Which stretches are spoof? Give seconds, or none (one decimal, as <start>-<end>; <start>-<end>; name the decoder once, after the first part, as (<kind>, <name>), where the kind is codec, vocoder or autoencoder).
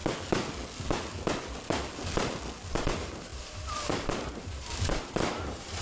2.8-5.8 (vocoder, BigVGAN v2)